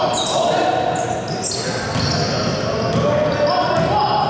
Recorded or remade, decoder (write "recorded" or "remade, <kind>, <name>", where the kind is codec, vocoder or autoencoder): recorded